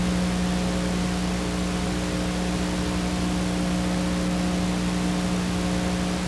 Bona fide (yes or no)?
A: yes